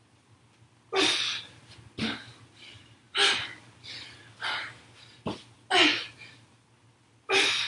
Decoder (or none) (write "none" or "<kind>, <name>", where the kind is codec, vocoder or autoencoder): none